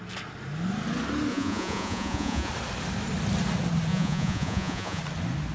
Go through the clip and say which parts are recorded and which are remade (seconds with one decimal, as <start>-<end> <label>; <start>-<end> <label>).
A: 0.0-1.3 recorded; 1.3-2.5 remade; 2.5-3.9 recorded; 3.9-5.0 remade; 5.0-5.5 recorded